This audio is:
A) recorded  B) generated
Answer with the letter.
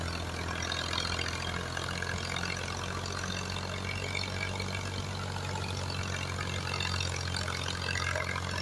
A